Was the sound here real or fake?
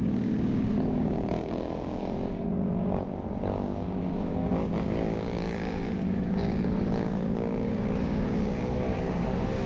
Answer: fake